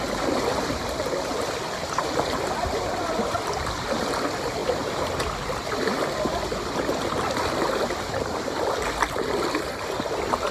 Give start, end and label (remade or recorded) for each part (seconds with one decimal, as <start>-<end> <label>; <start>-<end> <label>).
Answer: 0.0-10.5 recorded